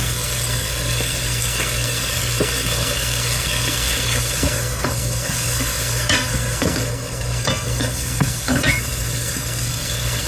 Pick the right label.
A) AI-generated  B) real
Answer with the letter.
A